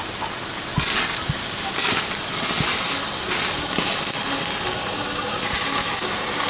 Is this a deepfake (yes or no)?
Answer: no